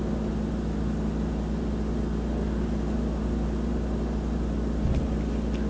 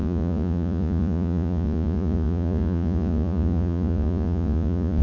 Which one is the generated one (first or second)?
second